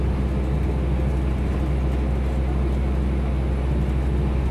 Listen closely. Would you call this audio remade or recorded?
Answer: recorded